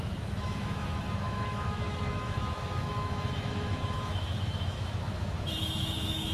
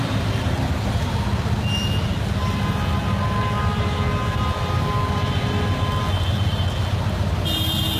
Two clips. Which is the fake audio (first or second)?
first